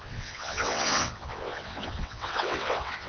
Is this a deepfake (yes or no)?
yes